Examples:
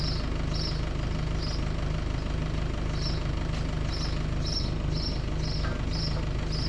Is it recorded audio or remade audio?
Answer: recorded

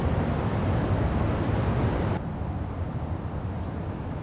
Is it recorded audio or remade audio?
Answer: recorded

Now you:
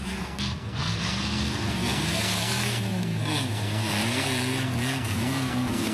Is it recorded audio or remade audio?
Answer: remade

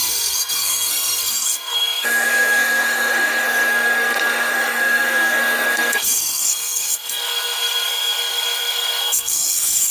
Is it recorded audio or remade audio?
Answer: remade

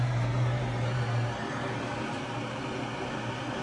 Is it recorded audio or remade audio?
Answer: remade